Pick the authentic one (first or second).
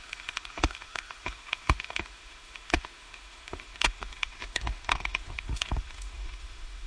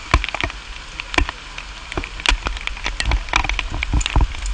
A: second